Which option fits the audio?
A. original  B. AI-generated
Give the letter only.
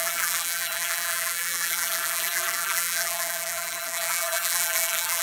B